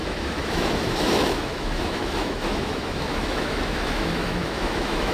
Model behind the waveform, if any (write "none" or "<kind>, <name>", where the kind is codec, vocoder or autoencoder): autoencoder, DAC-VAE